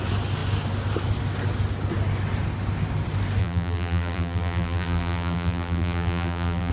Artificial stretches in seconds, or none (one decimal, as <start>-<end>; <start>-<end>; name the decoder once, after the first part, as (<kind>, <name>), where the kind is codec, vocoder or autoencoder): 3.4-6.7 (vocoder, BigVGAN v2)